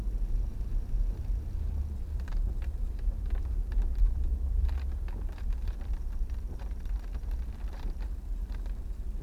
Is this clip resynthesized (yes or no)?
yes